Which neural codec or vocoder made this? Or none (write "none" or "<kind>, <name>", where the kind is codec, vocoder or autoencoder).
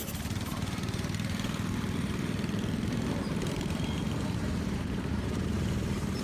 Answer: vocoder, BigVGAN v2